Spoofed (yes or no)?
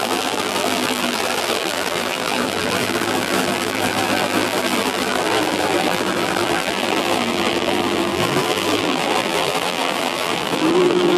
yes